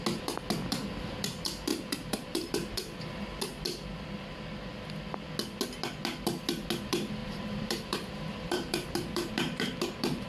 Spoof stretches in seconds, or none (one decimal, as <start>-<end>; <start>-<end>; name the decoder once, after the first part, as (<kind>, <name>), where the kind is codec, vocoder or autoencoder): 1.7-2.5 (vocoder, BigVGAN v2); 7.2-10.3